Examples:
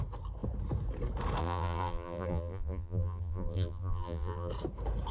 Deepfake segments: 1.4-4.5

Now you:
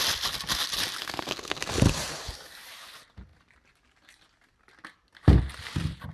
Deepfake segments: 1.0-1.7

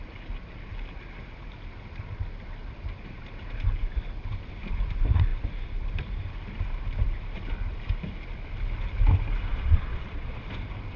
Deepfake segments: 9.5-10.5

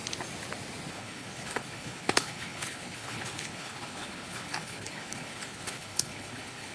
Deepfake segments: 0.9-6.7

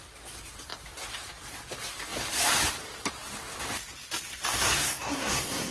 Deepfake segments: 4.5-5.7

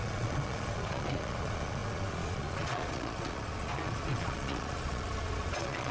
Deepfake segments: 0.0-5.9

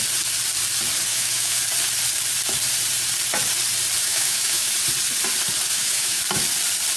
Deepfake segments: 1.1-1.6; 4.0-4.7; 5.7-6.2

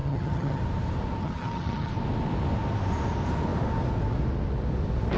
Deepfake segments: 0.0-0.6; 1.2-1.9